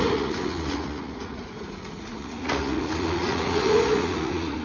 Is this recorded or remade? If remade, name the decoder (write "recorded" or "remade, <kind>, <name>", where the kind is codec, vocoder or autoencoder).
remade, vocoder, Vocos